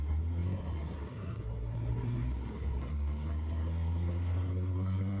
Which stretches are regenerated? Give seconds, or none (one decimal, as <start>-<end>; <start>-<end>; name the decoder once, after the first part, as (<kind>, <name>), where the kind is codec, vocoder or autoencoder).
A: 0.0-5.2 (codec, SNAC)